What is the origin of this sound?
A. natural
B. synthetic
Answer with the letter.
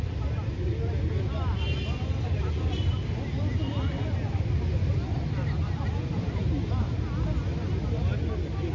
A